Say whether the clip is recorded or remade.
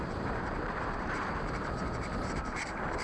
remade